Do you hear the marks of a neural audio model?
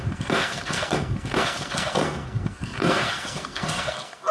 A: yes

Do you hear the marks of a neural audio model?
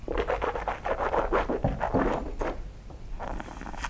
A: no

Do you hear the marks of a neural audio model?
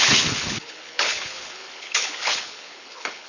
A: yes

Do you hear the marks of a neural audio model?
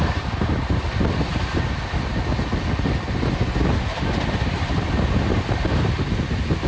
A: no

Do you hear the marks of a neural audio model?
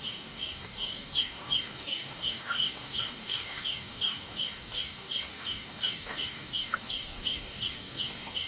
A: yes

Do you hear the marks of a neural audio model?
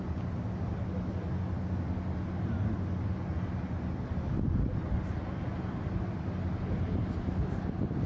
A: no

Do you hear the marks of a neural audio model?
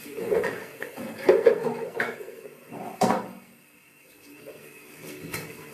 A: yes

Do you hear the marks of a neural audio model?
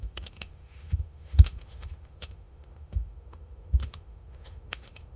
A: yes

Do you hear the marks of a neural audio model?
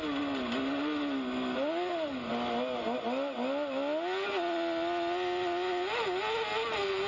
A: no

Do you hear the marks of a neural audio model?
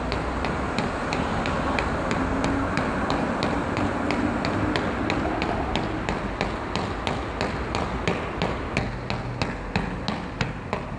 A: no